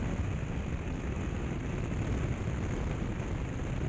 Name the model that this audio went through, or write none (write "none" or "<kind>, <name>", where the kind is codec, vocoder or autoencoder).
none